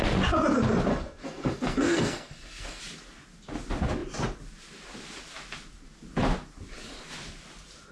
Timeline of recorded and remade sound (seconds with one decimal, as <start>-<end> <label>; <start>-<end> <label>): 0.0-0.9 recorded; 0.9-2.8 remade; 2.8-7.9 recorded